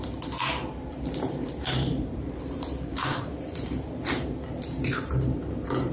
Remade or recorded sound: remade